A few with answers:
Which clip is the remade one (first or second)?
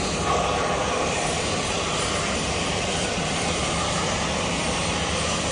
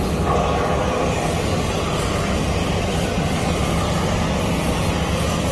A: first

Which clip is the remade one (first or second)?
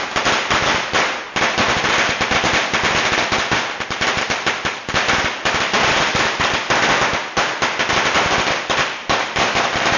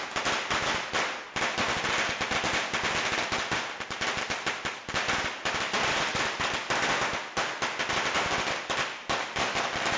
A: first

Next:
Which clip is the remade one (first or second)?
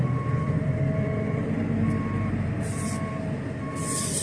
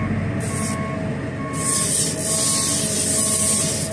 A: first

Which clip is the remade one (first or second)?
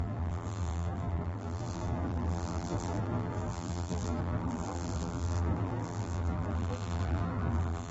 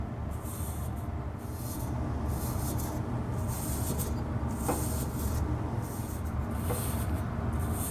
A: first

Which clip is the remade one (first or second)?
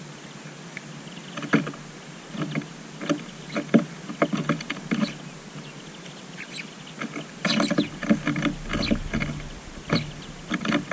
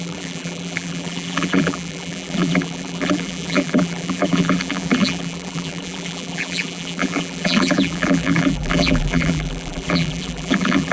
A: second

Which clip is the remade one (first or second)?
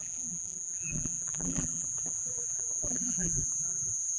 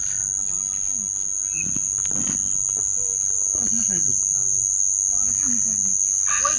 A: first